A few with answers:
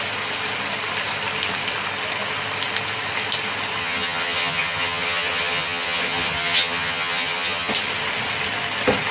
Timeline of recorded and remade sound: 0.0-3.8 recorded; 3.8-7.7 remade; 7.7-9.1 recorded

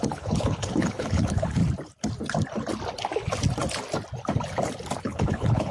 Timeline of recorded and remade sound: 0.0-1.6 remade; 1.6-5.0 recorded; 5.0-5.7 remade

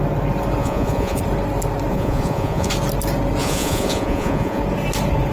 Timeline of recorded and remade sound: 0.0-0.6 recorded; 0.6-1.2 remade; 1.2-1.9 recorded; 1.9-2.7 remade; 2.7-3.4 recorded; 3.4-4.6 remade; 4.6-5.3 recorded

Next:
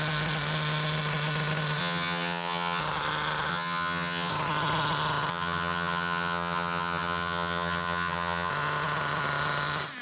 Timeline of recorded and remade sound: 0.0-1.8 recorded; 1.8-2.8 remade; 2.8-3.5 recorded; 3.5-4.3 remade; 4.3-5.3 recorded; 5.3-8.5 remade; 8.5-10.0 recorded